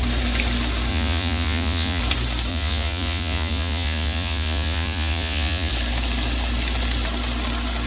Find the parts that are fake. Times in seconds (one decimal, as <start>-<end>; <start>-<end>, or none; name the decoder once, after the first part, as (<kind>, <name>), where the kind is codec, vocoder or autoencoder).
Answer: 0.9-2.0 (vocoder, Vocos); 2.5-5.7